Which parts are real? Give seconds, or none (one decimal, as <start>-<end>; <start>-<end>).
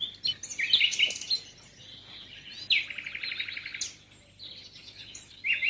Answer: 0.0-4.8; 5.3-5.7